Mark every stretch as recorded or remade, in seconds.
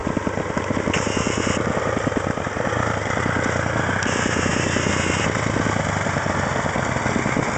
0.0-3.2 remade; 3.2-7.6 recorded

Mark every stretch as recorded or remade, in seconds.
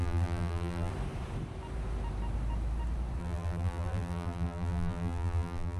0.0-0.9 remade; 0.9-3.2 recorded; 3.2-5.8 remade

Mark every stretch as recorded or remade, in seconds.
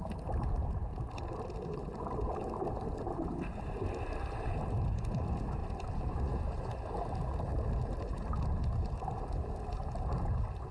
0.0-0.8 recorded; 0.8-3.5 remade; 3.5-10.7 recorded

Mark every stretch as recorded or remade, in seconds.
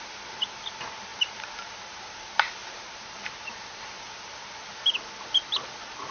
0.0-1.1 recorded; 1.1-1.7 remade; 1.7-2.6 recorded; 2.6-4.0 remade; 4.0-6.1 recorded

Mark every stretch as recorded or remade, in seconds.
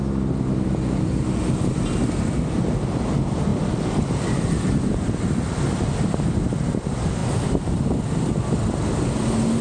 0.0-3.5 recorded; 3.5-6.5 remade; 6.5-9.6 recorded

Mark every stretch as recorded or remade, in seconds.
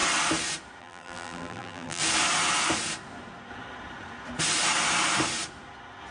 0.0-0.8 recorded; 0.8-2.0 remade; 2.0-6.1 recorded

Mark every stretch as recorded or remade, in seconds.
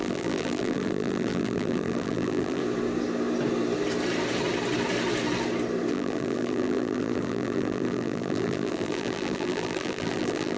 0.0-2.6 remade; 2.6-5.9 recorded; 5.9-10.6 remade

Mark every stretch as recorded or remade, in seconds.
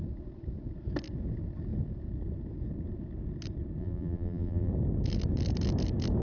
0.0-3.8 recorded; 3.8-4.7 remade; 4.7-6.2 recorded